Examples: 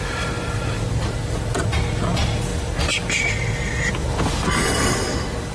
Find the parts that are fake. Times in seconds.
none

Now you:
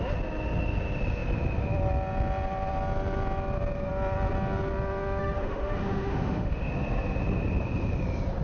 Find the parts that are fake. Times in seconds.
5.2-6.7 (autoencoder, DAC-VAE)

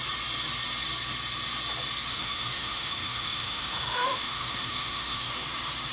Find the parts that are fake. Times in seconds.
2.1-5.3 (autoencoder, DAC-VAE)

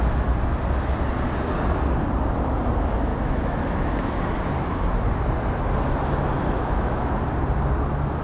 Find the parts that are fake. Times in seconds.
3.1-4.2 (autoencoder, DAC-VAE); 6.4-7.1

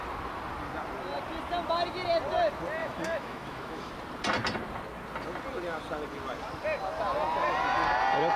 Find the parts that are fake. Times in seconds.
2.8-3.9 (autoencoder, DAC-VAE)

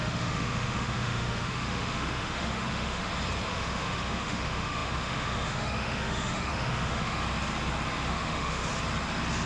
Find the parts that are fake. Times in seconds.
0.0-3.0 (autoencoder, DAC-VAE); 3.5-7.2; 8.1-8.6